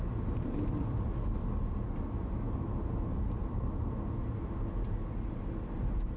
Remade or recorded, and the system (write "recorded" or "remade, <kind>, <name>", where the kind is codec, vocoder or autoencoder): recorded